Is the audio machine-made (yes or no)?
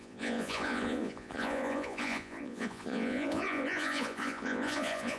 yes